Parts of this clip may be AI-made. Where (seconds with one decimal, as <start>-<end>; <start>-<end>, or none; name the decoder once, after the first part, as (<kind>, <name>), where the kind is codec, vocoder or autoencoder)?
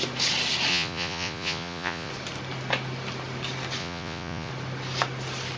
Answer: 0.7-2.1 (vocoder, Vocos); 3.8-4.5